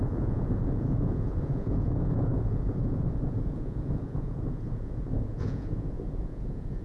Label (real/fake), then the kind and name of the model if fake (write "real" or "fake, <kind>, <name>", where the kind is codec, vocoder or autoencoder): fake, vocoder, Vocos